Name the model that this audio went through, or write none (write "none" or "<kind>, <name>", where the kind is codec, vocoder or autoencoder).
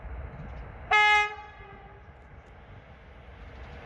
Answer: none